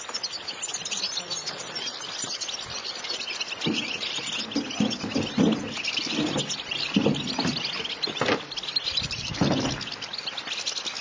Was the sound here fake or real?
real